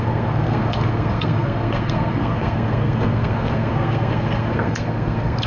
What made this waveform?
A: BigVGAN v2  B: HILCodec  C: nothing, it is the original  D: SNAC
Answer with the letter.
D